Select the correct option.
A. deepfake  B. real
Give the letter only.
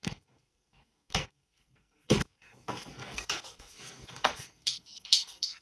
A